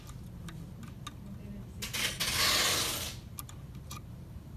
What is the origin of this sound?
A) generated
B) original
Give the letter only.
B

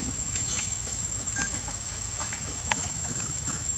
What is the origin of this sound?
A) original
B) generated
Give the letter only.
B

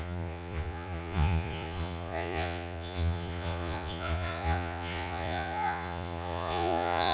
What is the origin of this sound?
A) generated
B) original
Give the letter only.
A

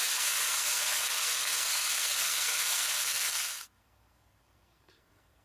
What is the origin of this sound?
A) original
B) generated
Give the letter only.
B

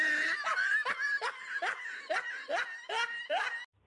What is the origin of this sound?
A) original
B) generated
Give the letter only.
A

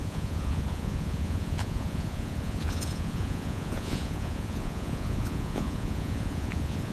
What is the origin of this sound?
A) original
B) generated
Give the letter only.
B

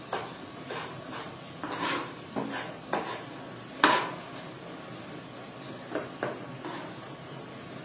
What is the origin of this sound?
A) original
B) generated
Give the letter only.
A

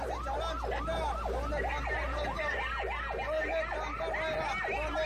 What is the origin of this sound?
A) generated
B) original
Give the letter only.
B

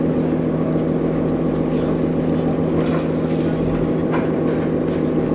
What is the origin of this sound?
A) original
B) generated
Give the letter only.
A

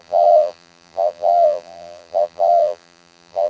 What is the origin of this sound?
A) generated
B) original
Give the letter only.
A